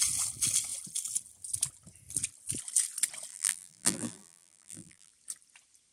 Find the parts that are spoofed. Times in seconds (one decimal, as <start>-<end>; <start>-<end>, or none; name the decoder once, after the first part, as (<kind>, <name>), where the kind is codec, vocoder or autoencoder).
3.3-5.1 (vocoder, BigVGAN v2)